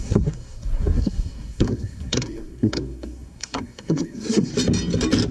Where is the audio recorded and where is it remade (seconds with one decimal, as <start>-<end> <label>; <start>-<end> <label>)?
0.0-4.5 remade; 4.5-5.3 recorded